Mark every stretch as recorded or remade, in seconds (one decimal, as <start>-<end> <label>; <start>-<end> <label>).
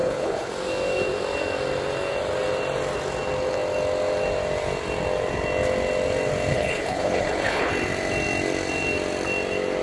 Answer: 0.0-0.5 remade; 0.5-6.5 recorded; 6.5-7.7 remade; 7.7-9.8 recorded